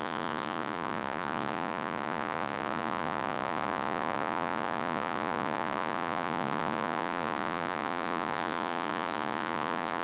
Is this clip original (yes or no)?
no